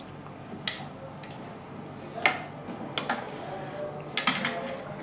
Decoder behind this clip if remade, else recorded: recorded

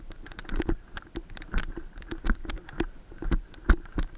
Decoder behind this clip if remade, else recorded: remade, vocoder, BigVGAN v2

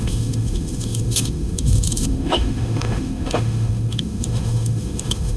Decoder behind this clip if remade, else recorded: remade, autoencoder, DAC-VAE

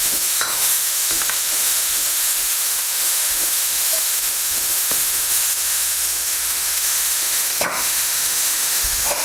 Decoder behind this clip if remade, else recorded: remade, autoencoder, DAC-VAE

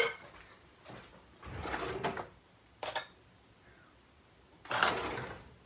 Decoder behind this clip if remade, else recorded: recorded